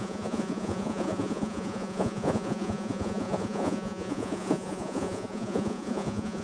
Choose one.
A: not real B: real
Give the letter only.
A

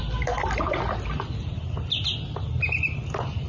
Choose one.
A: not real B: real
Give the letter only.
B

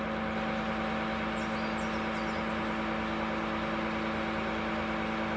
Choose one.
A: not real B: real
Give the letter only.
B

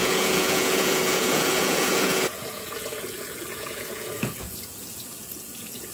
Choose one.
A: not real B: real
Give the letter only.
A